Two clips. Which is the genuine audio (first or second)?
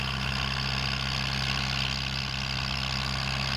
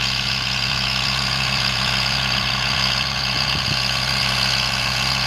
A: first